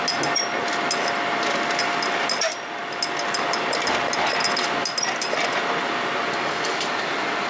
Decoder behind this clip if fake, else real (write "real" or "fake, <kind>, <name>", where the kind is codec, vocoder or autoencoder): real